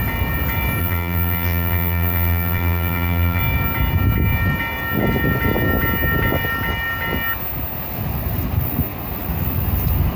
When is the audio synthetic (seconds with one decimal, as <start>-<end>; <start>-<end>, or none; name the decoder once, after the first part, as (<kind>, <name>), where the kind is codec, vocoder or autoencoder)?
0.8-3.4 (vocoder, BigVGAN v2)